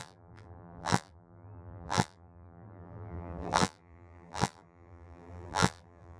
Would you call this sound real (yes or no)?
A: no